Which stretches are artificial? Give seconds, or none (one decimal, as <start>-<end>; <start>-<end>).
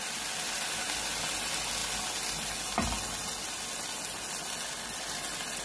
none